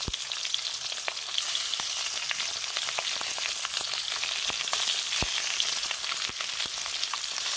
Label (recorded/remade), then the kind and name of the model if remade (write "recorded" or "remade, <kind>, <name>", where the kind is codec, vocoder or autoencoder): recorded